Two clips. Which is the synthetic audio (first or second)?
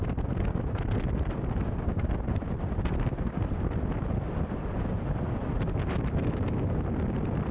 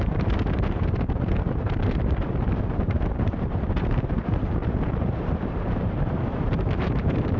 second